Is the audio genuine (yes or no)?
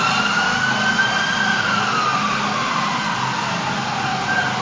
yes